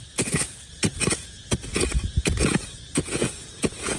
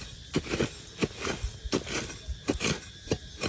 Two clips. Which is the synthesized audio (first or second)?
first